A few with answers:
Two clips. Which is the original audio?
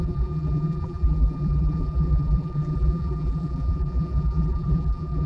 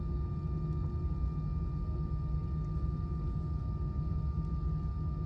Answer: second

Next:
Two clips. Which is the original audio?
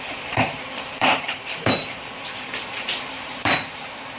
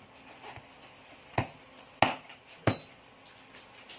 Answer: second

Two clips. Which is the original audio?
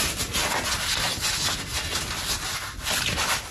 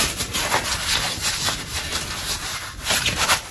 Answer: first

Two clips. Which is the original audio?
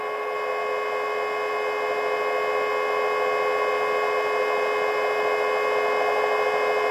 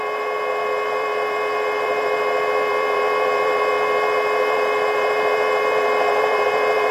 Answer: first